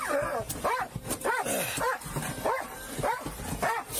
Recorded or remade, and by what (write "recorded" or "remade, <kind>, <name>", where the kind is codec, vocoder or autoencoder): recorded